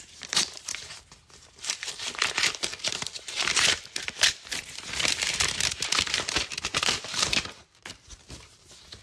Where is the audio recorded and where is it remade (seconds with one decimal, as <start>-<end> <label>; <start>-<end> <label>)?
0.0-0.7 remade; 0.7-1.7 recorded; 1.7-9.0 remade